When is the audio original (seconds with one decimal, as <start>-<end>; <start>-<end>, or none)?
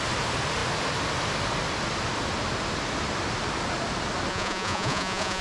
0.0-4.3